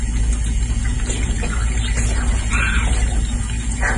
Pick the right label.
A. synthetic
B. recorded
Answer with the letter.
B